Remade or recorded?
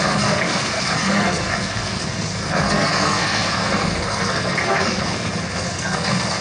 remade